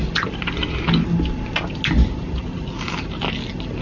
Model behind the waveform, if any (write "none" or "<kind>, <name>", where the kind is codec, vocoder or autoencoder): none